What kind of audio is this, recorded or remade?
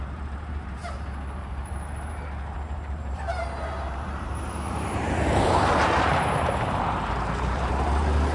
remade